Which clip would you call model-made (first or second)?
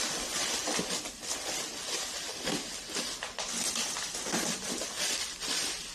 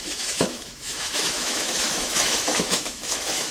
second